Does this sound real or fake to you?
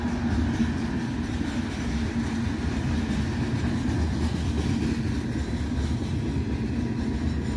real